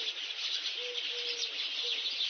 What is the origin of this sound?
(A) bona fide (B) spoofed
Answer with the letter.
A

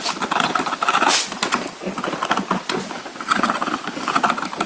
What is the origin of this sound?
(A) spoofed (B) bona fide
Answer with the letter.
B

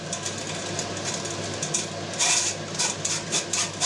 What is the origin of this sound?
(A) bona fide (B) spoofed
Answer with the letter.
A